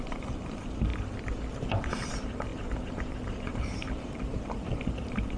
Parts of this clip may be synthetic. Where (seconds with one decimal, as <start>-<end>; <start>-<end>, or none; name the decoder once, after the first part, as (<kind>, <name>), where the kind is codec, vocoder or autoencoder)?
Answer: 0.0-0.9 (vocoder, BigVGAN v2); 1.5-5.4